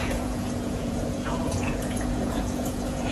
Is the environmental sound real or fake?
fake